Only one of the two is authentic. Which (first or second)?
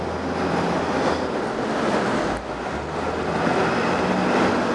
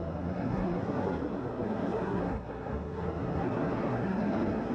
first